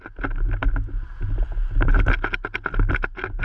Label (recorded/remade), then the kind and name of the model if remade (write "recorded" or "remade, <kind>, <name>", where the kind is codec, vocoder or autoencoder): recorded